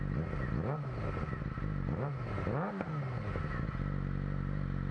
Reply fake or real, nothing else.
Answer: real